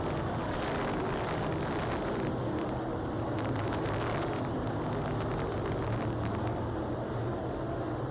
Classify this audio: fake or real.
real